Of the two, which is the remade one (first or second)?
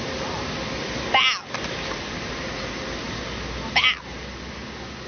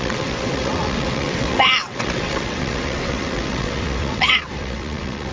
second